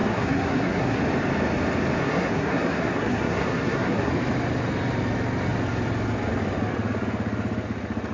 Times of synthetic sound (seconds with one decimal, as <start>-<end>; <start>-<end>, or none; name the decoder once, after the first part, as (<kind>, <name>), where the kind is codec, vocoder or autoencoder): 0.0-1.0 (codec, SNAC); 2.0-4.1